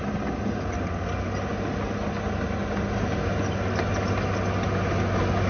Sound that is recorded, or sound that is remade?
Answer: recorded